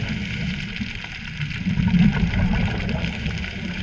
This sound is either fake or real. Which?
real